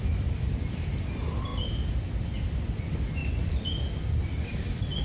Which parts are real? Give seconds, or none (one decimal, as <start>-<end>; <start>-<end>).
0.0-3.2